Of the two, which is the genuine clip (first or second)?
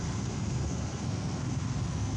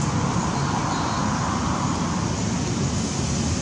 second